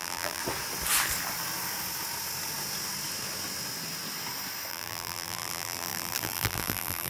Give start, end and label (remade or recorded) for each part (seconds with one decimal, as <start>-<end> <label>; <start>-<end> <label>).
0.0-0.4 remade; 0.4-4.7 recorded; 4.7-7.1 remade